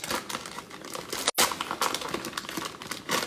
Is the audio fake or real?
real